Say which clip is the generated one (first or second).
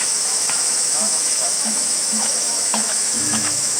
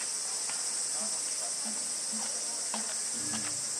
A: first